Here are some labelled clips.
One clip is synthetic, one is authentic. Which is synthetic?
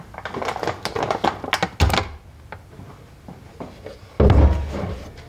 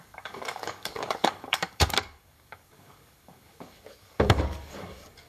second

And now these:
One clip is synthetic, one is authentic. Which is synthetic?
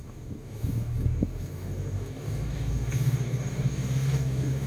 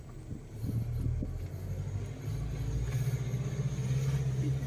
first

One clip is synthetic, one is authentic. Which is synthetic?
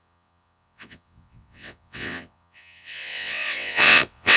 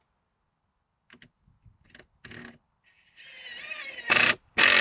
first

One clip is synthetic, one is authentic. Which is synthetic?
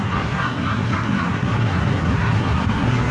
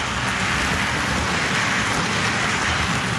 first